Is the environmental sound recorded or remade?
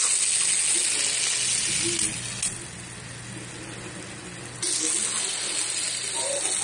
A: recorded